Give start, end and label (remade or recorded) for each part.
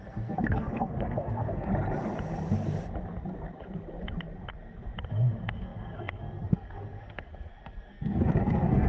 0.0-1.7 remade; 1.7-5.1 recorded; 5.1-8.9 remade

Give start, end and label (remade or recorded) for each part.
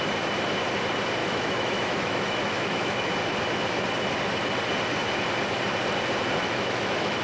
0.0-1.2 recorded; 1.2-3.1 remade; 3.1-6.4 recorded; 6.4-7.2 remade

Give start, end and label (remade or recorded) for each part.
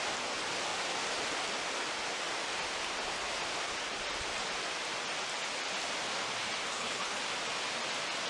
0.0-6.7 recorded; 6.7-7.2 remade; 7.2-8.3 recorded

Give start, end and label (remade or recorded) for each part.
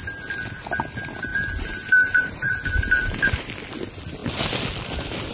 0.0-1.3 recorded; 1.3-3.5 remade; 3.5-5.3 recorded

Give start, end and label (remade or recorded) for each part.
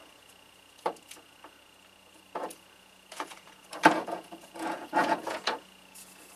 0.0-6.4 remade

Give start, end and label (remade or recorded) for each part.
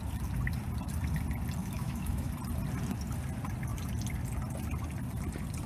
0.0-1.6 recorded; 1.6-2.3 remade; 2.3-5.7 recorded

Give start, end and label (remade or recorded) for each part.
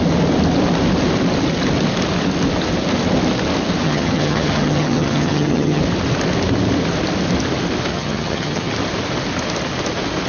0.0-3.8 recorded; 3.8-5.8 remade; 5.8-7.9 recorded; 7.9-8.7 remade; 8.7-10.3 recorded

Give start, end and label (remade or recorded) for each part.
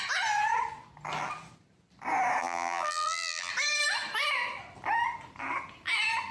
0.0-2.4 recorded; 2.4-3.5 remade; 3.5-6.3 recorded